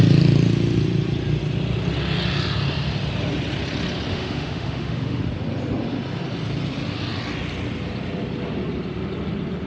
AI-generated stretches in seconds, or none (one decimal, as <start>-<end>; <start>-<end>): 4.1-5.2